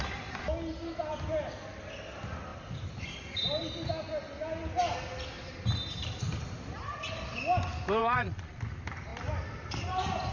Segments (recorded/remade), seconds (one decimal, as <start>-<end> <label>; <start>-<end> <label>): 0.0-8.0 recorded; 8.0-8.6 remade; 8.6-10.3 recorded